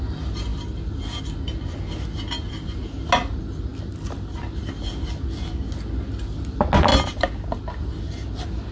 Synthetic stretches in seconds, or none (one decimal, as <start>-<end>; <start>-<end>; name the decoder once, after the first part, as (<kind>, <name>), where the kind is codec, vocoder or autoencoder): none